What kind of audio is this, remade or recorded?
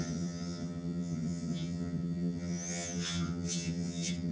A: remade